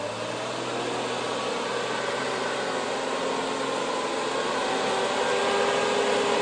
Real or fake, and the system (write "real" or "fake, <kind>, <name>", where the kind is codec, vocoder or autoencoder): real